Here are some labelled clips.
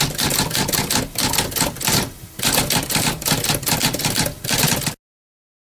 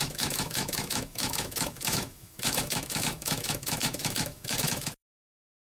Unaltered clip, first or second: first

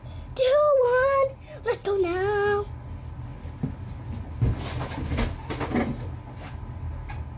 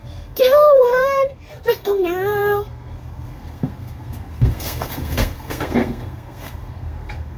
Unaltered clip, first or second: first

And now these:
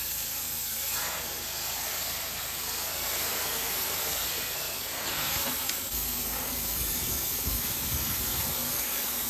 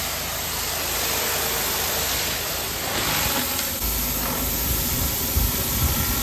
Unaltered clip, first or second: second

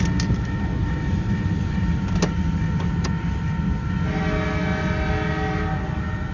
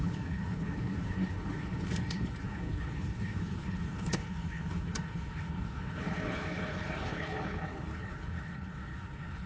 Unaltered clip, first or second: first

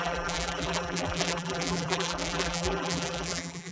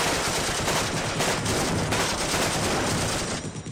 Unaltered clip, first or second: second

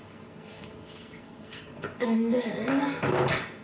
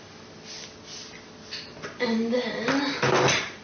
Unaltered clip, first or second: second